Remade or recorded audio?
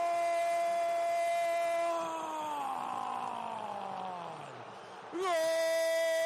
recorded